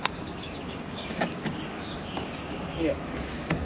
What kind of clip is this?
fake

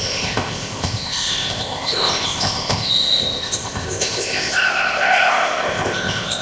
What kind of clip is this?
fake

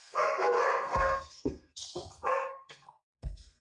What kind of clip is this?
fake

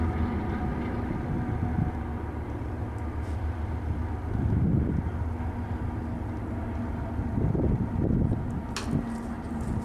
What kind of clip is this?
real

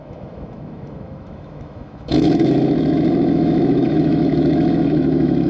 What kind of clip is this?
fake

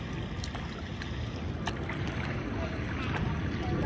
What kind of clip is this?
real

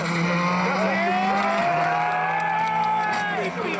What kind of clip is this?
real